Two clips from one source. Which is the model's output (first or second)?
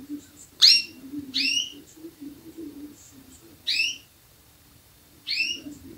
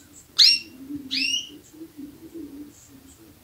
first